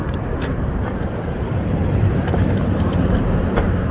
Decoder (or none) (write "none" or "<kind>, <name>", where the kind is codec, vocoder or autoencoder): vocoder, BigVGAN v2